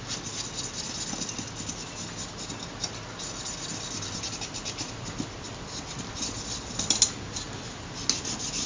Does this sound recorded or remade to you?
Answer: recorded